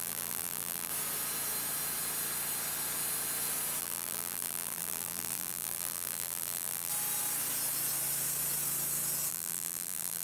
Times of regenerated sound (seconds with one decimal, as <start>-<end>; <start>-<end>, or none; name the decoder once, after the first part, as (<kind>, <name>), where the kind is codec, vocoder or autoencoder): 0.0-0.9 (vocoder, BigVGAN v2); 3.8-6.9; 9.3-10.2